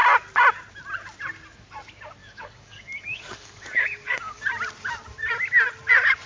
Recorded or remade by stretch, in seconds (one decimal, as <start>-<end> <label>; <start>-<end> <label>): 0.0-2.2 recorded; 2.2-4.4 remade; 4.4-6.3 recorded